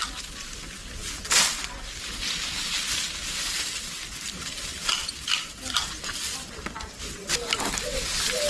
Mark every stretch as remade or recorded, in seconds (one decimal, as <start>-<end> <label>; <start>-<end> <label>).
0.0-8.5 recorded